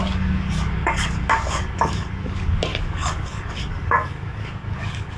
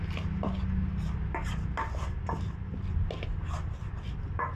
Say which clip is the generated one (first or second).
first